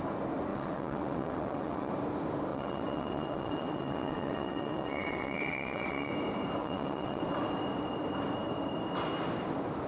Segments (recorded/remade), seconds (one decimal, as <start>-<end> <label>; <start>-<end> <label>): 0.0-0.5 recorded; 0.5-1.9 remade; 1.9-2.5 recorded; 2.5-6.1 remade; 6.1-6.6 recorded; 6.6-7.2 remade; 7.2-9.9 recorded